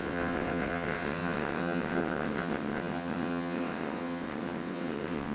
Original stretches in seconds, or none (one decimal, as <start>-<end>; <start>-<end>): none